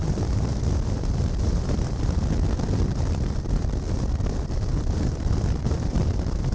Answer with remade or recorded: remade